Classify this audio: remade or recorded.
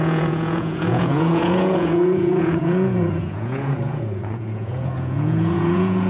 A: remade